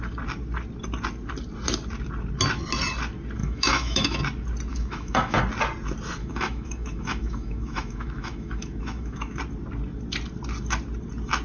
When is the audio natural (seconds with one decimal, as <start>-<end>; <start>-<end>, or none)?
0.0-3.4; 4.2-4.7; 5.4-6.2; 9.4-11.4